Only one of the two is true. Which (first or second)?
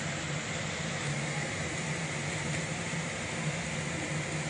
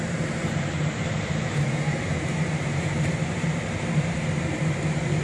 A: first